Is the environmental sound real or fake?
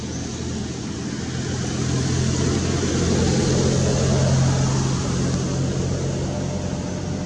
real